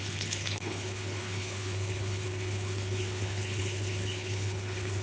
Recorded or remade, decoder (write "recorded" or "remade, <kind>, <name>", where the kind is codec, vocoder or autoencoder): remade, codec, HILCodec